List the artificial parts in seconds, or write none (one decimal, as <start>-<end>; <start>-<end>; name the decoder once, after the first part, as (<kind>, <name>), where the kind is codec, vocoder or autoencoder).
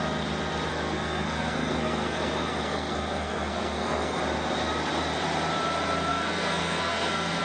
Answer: 0.7-4.2 (codec, SNAC); 6.1-7.4